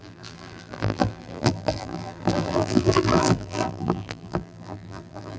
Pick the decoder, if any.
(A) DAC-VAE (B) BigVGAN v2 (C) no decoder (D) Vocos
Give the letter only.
B